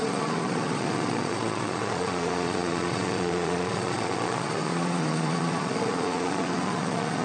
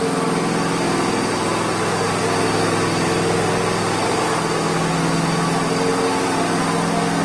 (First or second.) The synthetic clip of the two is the first